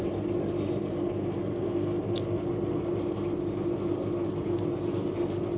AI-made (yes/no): no